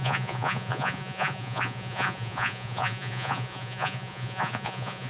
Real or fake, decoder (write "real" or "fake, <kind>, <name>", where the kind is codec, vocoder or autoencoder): fake, vocoder, Vocos